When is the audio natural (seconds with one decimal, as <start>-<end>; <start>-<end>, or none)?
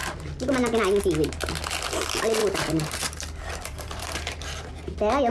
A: 0.0-2.4; 4.2-5.3